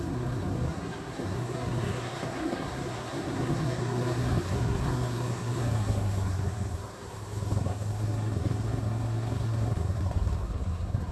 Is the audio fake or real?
fake